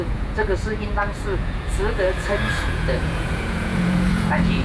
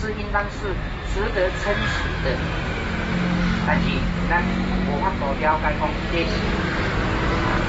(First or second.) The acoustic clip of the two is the second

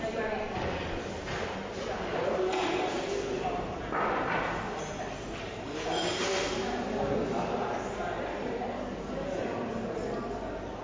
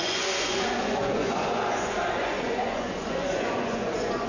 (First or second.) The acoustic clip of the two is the first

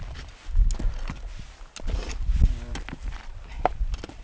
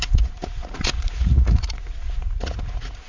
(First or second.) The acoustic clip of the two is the first